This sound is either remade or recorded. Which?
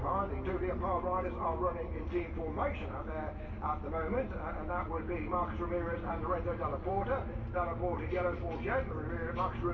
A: recorded